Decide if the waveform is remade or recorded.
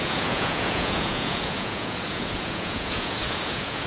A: remade